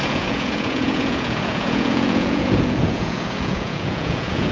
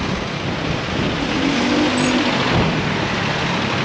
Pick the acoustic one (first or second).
second